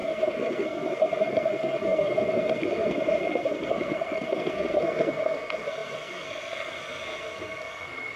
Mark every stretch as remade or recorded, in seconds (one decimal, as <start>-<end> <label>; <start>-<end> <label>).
0.0-8.2 remade